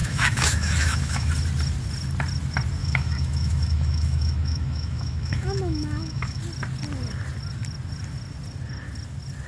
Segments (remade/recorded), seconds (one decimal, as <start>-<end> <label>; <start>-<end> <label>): 0.0-1.3 remade; 1.3-2.8 recorded; 2.8-6.4 remade; 6.4-9.5 recorded